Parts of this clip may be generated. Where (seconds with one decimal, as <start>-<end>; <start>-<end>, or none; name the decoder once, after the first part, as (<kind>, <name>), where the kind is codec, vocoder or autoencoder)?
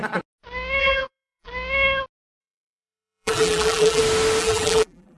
0.8-1.5 (vocoder, BigVGAN v2); 2.4-4.0; 4.4-5.2